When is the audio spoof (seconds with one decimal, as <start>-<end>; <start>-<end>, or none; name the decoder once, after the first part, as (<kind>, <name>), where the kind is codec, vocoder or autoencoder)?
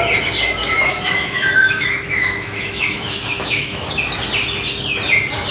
0.6-3.9 (autoencoder, DAC-VAE)